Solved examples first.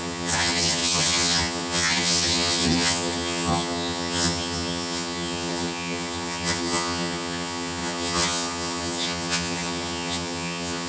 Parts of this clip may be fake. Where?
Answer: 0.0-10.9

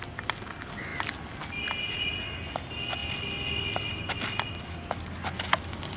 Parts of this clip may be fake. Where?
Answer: none

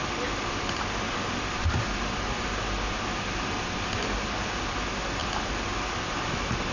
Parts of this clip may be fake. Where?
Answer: none

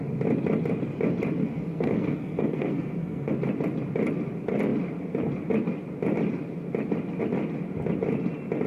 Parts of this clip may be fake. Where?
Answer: 1.4-3.3

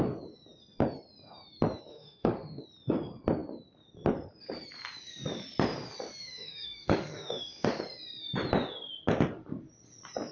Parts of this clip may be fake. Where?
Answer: 1.9-2.6; 6.2-7.8

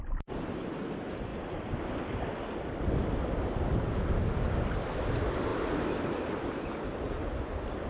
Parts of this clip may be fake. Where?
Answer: none

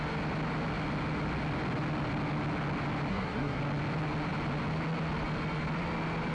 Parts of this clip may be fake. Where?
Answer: 3.1-3.6